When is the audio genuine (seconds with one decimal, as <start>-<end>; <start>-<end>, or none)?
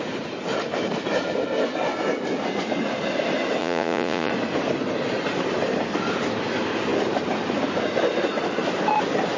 0.0-3.6; 4.3-9.4